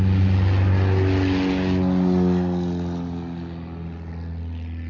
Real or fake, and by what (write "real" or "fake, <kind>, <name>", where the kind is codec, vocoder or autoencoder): real